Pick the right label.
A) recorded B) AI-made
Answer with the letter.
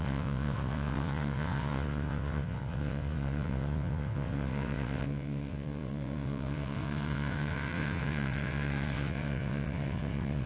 B